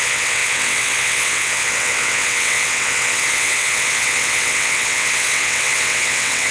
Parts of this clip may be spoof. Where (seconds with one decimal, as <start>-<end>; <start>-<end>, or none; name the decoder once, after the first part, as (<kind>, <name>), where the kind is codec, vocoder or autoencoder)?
0.0-6.5 (vocoder, WaveNeXt)